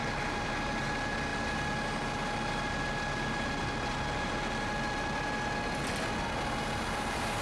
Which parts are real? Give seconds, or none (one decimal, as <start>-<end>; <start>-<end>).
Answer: 0.5-7.4